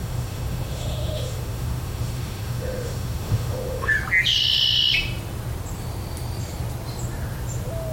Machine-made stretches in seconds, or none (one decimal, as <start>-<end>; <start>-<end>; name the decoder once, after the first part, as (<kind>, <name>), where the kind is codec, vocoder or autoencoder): 0.0-3.9 (autoencoder, DAC-VAE)